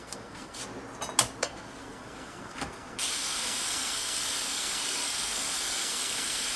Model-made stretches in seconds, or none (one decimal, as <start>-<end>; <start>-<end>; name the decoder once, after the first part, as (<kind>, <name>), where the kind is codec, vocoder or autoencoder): 0.0-0.6 (codec, SNAC); 1.4-6.6